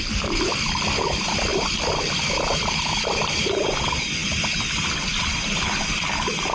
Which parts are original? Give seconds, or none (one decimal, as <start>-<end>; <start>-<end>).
0.0-6.5